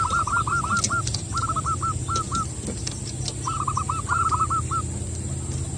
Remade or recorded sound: recorded